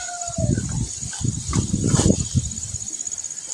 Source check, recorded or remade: recorded